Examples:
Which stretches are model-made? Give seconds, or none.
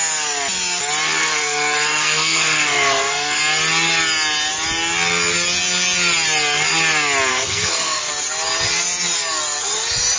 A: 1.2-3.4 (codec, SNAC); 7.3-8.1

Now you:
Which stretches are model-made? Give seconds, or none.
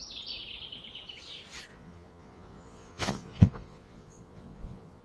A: 1.7-5.0 (vocoder, Vocos)